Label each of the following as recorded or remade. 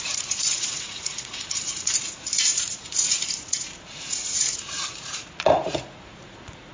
remade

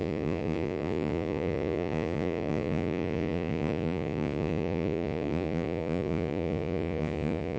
remade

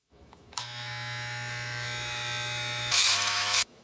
remade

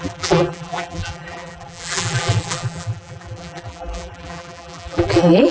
remade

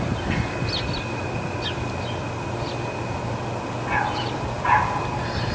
recorded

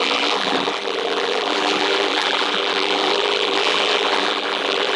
remade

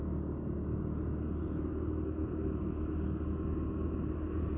recorded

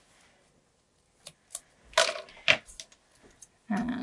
recorded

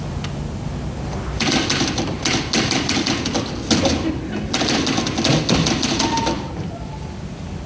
recorded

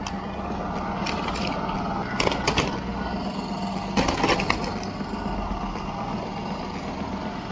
recorded